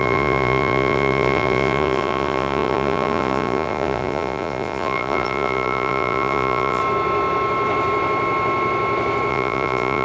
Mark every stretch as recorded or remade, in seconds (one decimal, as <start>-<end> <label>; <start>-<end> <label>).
0.0-6.8 remade; 6.8-9.3 recorded; 9.3-10.0 remade

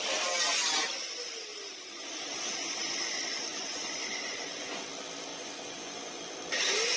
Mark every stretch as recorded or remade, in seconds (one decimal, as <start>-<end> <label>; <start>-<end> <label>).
0.0-3.5 recorded; 3.5-4.8 remade; 4.8-5.3 recorded; 5.3-6.2 remade; 6.2-7.0 recorded

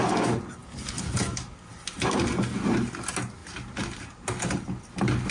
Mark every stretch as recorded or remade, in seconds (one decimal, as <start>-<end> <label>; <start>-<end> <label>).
0.0-5.3 recorded

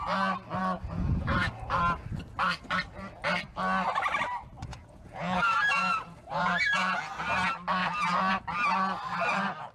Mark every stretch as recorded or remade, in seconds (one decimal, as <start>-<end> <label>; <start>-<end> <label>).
0.0-0.6 recorded; 0.6-1.5 remade; 1.5-4.7 recorded; 4.7-7.0 remade; 7.0-9.7 recorded

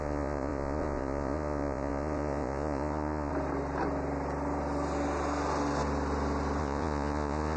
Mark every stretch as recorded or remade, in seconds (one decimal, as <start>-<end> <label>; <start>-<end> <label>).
0.0-3.3 remade; 3.3-6.6 recorded; 6.6-7.6 remade

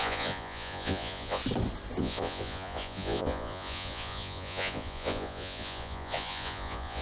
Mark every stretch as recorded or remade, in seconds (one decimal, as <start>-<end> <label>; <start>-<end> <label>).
0.0-1.4 remade; 1.4-2.0 recorded; 2.0-7.0 remade

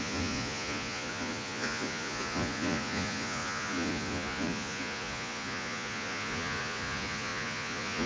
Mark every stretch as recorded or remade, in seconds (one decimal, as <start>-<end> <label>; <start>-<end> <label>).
0.0-8.1 remade

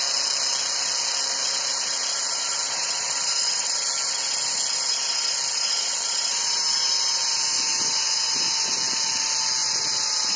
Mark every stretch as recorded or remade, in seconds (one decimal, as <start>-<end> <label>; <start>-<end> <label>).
0.0-7.7 recorded; 7.7-8.7 remade; 8.7-9.6 recorded; 9.6-10.4 remade